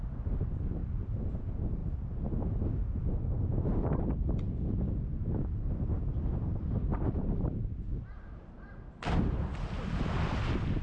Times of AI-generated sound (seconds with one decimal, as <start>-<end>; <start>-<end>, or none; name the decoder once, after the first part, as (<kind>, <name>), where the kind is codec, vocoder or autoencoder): 0.8-1.4 (vocoder, BigVGAN v2); 6.9-8.5